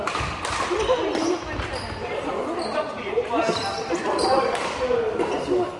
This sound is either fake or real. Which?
real